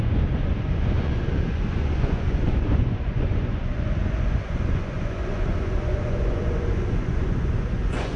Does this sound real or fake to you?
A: fake